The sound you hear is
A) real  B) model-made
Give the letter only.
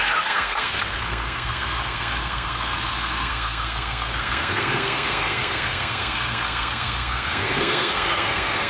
B